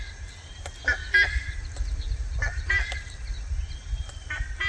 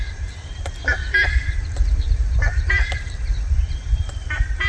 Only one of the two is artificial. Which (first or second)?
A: second